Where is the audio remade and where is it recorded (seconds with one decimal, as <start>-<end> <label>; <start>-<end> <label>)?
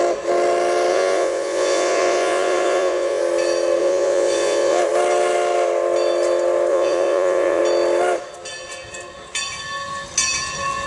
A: 0.0-0.9 recorded; 0.9-3.2 remade; 3.2-3.8 recorded; 3.8-4.8 remade; 4.8-6.7 recorded; 6.7-7.6 remade; 7.6-10.9 recorded